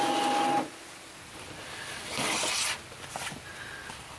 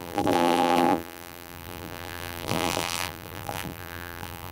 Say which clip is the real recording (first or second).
first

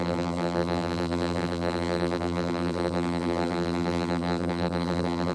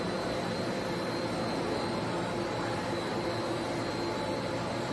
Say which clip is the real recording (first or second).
second